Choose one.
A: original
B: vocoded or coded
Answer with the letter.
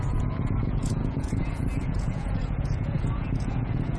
B